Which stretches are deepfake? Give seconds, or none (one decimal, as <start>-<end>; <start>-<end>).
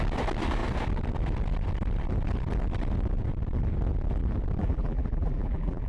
4.6-5.9